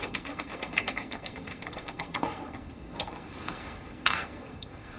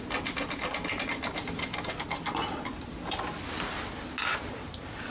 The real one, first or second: second